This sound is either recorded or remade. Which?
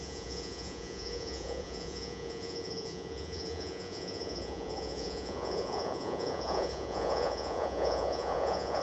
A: remade